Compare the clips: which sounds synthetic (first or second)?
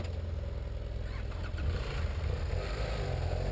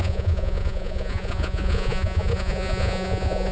second